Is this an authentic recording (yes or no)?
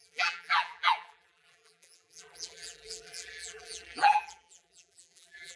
no